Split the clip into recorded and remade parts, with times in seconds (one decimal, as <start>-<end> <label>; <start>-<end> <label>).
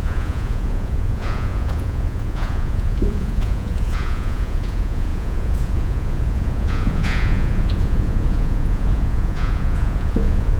0.0-10.6 remade